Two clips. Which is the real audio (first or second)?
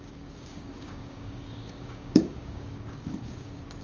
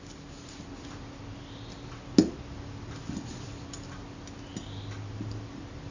second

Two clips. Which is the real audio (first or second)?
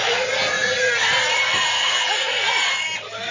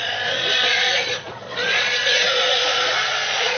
first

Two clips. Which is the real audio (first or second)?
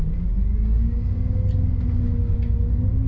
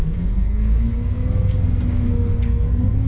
first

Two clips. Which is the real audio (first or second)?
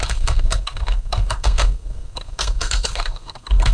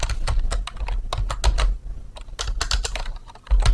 second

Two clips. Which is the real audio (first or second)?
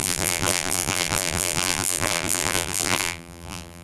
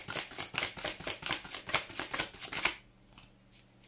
second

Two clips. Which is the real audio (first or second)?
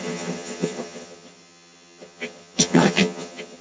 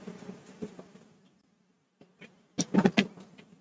second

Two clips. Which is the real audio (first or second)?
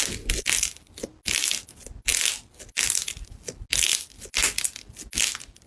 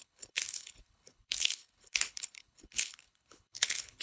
first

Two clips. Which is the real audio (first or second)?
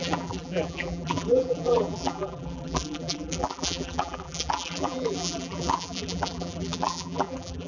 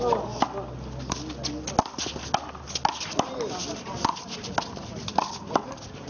second